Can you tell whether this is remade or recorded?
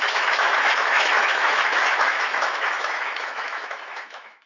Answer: remade